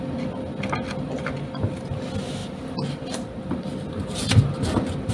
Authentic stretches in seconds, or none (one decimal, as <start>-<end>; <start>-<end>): 0.0-5.1